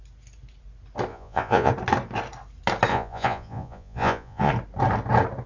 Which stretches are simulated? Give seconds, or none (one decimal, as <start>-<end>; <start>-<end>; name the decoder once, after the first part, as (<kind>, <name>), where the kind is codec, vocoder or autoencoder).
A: 1.1-1.7 (vocoder, Vocos); 2.9-4.5